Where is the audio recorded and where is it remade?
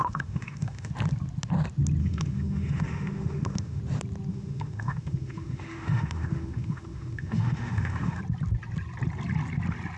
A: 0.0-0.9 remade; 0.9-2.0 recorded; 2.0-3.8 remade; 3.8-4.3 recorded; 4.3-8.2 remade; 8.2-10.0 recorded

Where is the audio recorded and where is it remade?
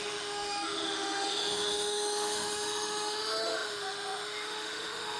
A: 0.0-5.2 remade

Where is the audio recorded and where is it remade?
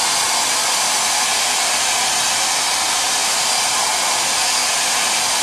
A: 0.0-5.4 recorded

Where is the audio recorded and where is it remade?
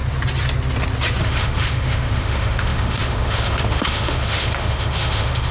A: 0.0-1.2 recorded; 1.2-5.5 remade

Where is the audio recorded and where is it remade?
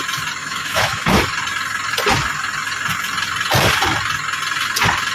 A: 0.0-0.4 recorded; 0.4-1.2 remade; 1.2-5.1 recorded